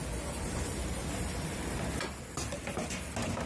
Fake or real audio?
real